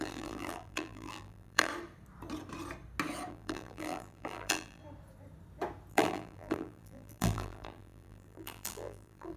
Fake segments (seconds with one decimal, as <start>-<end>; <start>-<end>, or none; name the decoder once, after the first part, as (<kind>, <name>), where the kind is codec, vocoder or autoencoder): 0.0-1.7 (vocoder, BigVGAN v2); 3.3-4.8; 5.9-9.4